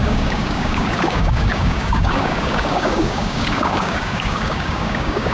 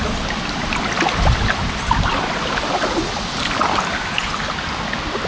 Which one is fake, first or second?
first